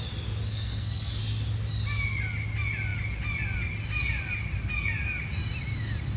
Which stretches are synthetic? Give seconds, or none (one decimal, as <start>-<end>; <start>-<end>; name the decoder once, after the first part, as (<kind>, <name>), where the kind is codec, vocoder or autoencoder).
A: 0.5-1.2 (codec, SNAC)